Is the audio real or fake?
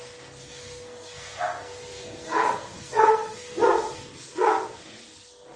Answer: fake